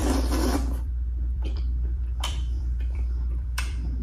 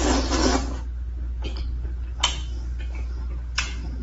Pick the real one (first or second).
second